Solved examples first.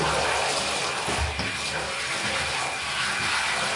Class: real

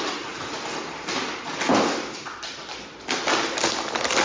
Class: real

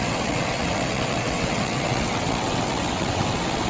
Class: fake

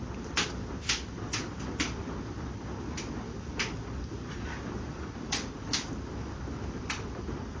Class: real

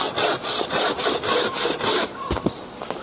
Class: real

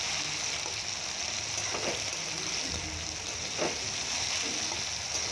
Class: real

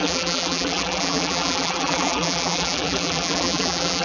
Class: fake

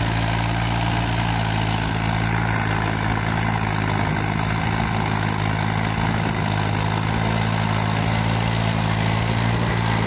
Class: real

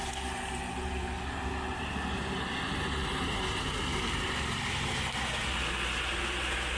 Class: real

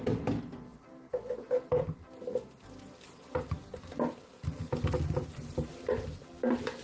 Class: real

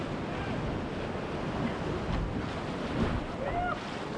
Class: real